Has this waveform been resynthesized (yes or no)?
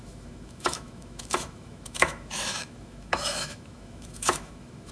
yes